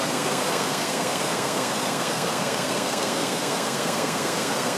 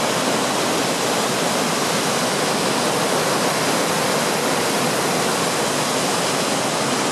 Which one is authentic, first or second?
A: second